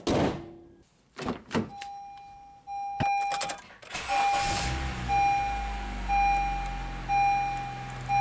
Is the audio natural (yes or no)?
yes